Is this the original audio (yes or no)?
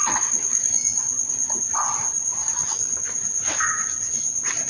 yes